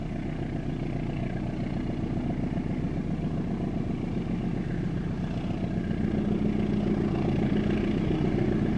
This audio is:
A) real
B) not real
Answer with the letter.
A